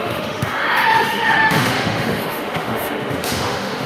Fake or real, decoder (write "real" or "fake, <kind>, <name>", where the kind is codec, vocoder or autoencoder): fake, autoencoder, DAC-VAE